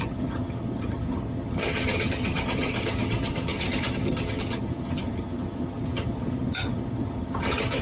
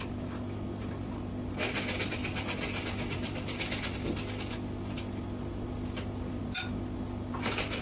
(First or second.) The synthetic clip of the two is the first